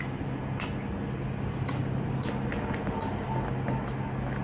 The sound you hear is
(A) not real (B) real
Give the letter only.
B